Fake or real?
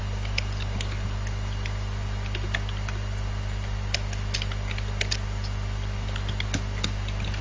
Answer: real